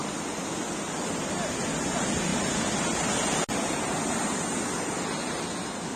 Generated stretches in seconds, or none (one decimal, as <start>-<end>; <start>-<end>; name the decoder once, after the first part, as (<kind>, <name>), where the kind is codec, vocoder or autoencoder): none